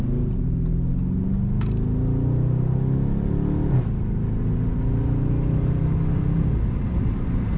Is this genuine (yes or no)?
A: yes